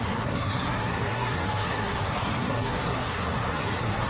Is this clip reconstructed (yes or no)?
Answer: yes